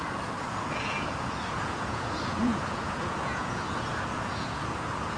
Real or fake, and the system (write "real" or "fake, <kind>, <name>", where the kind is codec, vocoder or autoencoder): fake, vocoder, Vocos